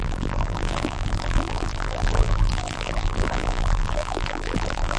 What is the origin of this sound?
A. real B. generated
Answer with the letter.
B